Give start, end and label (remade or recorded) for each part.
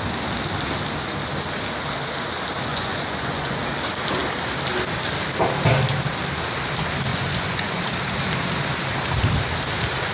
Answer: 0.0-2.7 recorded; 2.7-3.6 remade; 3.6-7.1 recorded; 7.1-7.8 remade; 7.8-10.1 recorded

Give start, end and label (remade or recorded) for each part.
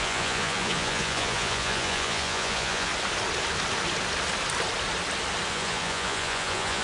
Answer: 0.0-2.9 remade; 2.9-5.5 recorded; 5.5-6.8 remade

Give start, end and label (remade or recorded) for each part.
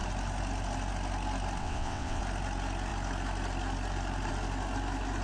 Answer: 0.0-1.6 recorded; 1.6-2.2 remade; 2.2-5.2 recorded